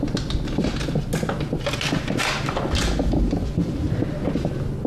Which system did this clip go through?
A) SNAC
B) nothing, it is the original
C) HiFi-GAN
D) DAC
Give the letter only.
B